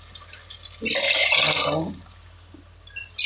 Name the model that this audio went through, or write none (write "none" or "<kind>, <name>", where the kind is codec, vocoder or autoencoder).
none